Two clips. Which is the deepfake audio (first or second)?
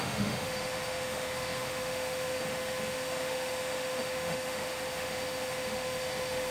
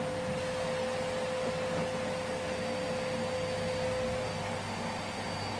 first